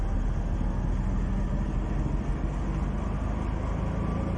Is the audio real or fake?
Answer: real